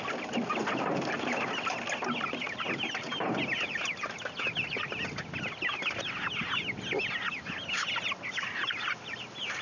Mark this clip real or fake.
real